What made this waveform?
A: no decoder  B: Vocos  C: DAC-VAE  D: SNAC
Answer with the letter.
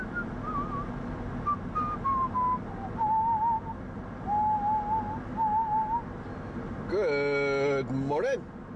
A